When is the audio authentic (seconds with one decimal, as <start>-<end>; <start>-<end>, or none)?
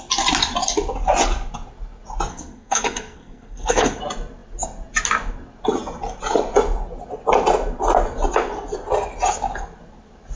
0.0-2.3; 4.0-10.4